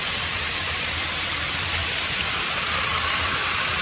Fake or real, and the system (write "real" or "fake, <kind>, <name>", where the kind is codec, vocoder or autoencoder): fake, vocoder, BigVGAN v2